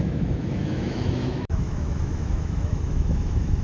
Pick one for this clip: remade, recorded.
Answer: remade